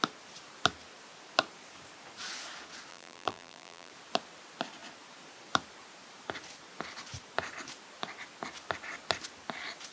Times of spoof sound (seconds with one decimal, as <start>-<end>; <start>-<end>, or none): 2.9-3.9